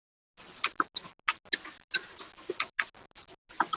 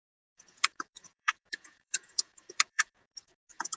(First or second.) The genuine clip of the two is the first